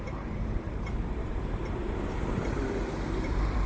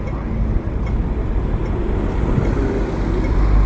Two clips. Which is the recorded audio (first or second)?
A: second